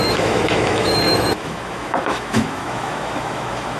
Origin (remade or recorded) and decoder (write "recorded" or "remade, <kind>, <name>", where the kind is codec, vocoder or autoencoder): remade, autoencoder, DAC-VAE